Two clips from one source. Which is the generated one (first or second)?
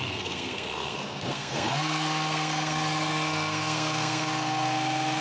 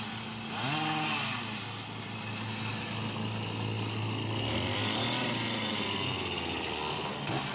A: first